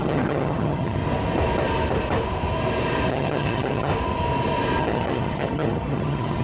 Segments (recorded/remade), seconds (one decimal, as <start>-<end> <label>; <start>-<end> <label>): 0.0-1.0 remade; 1.0-3.1 recorded; 3.1-3.9 remade; 3.9-4.8 recorded; 4.8-6.4 remade